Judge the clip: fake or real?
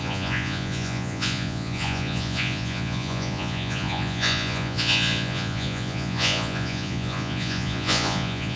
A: fake